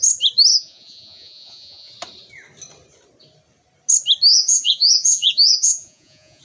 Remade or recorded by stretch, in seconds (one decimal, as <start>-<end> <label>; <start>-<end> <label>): 0.0-0.5 recorded; 0.5-1.9 remade; 1.9-4.3 recorded; 4.3-6.4 remade